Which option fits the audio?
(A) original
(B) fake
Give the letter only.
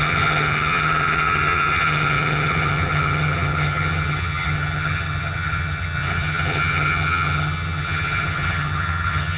B